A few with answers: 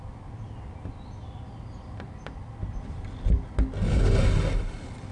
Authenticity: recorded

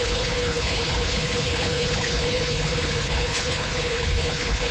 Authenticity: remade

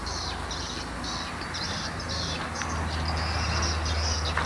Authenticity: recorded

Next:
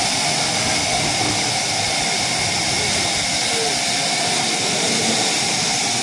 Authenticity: recorded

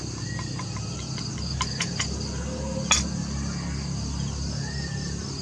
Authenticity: recorded